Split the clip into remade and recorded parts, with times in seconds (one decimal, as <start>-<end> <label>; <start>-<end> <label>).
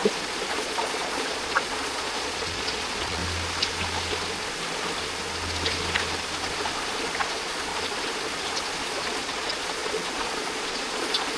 0.0-0.5 recorded; 0.5-3.2 remade; 3.2-7.2 recorded; 7.2-7.7 remade; 7.7-8.8 recorded; 8.8-11.4 remade